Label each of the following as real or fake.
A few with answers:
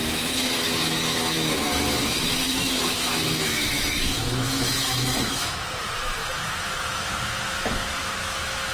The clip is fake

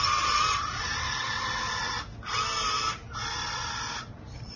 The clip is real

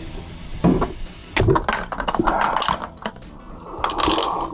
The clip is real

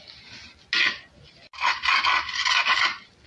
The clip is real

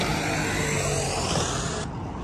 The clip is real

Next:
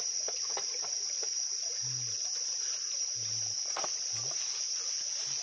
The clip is real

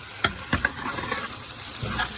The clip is real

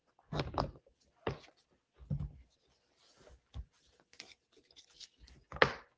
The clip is real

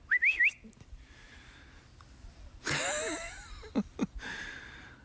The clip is real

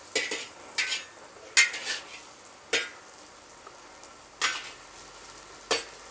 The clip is real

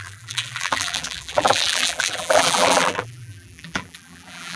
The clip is fake